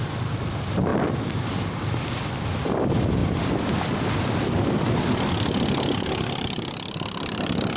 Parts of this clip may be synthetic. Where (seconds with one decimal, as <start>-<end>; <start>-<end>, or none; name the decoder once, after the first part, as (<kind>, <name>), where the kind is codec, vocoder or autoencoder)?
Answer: 0.9-2.5 (vocoder, BigVGAN v2)